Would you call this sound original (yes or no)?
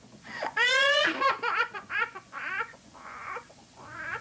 no